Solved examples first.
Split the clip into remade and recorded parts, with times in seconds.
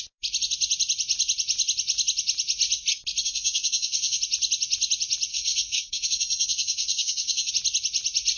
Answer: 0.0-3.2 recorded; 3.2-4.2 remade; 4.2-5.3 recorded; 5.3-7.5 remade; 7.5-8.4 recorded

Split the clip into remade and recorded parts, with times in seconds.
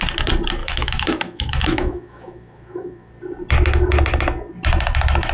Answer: 0.0-0.6 recorded; 0.6-3.1 remade; 3.1-5.3 recorded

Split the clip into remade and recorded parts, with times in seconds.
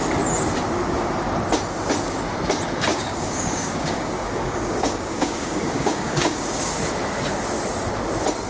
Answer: 0.0-2.9 recorded; 2.9-6.7 remade; 6.7-8.5 recorded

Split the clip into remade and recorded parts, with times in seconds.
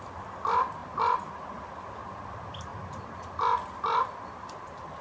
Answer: 0.0-5.0 recorded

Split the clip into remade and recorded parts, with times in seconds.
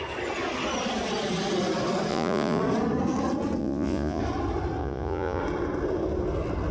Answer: 0.0-2.1 recorded; 2.1-2.6 remade; 2.6-3.6 recorded; 3.6-4.2 remade; 4.2-4.8 recorded; 4.8-5.4 remade; 5.4-6.7 recorded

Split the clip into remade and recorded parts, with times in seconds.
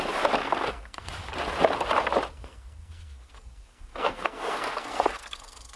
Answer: 0.0-0.4 recorded; 0.4-1.1 remade; 1.1-2.3 recorded; 2.3-5.8 remade